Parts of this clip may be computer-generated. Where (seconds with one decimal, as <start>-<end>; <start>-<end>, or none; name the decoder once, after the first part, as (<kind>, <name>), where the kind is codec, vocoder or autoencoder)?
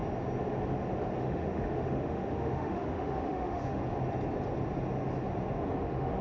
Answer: 1.2-3.8 (autoencoder, DAC-VAE); 5.8-6.2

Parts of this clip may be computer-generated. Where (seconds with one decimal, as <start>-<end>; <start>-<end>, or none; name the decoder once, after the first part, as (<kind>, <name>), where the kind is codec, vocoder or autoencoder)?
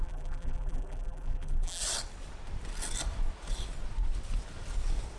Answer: 0.0-1.8 (vocoder, BigVGAN v2)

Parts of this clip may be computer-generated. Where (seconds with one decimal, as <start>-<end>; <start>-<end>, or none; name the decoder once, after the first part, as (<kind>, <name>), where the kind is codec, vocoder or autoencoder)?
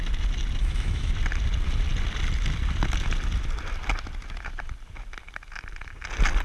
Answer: 0.6-1.1 (autoencoder, DAC-VAE)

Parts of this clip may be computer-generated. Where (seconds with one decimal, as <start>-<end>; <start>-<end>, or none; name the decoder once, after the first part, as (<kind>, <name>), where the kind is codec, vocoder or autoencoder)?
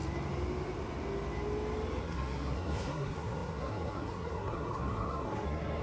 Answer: 2.0-5.8 (codec, SNAC)